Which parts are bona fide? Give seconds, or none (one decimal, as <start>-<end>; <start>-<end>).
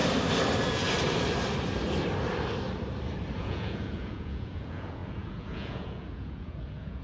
0.0-3.4